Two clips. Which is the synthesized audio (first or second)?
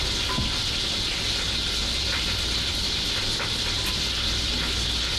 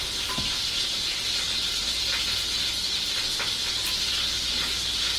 first